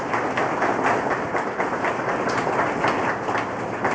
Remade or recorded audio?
recorded